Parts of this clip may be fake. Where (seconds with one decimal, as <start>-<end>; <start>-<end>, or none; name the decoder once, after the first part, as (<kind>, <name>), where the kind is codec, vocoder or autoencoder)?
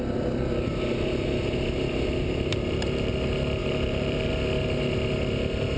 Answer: 2.5-3.1 (vocoder, BigVGAN v2); 3.6-4.3